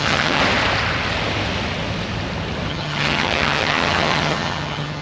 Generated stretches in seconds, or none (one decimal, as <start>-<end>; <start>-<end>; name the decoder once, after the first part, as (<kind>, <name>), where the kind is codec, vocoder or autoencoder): 0.0-0.4 (vocoder, HiFi-GAN); 2.7-5.0